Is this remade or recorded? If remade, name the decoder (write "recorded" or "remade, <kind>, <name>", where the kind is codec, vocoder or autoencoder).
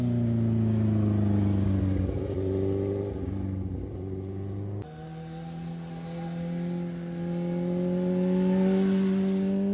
recorded